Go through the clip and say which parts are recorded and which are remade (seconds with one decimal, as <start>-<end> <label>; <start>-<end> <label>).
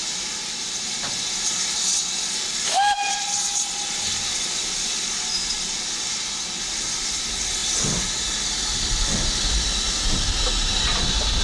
0.0-11.4 recorded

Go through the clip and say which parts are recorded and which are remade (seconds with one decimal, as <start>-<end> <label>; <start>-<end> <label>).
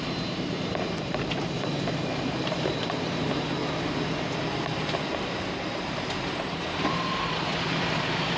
0.0-3.6 remade; 3.6-5.5 recorded; 5.5-8.4 remade